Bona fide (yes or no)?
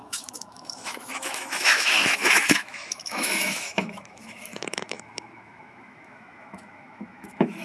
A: no